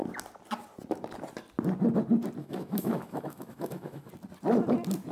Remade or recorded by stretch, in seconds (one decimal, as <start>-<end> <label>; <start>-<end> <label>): 0.0-2.4 recorded; 2.4-4.1 remade; 4.1-5.1 recorded